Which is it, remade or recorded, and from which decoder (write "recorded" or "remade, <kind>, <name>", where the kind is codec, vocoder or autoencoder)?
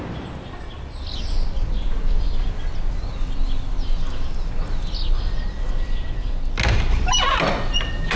recorded